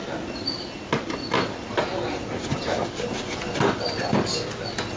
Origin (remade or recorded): recorded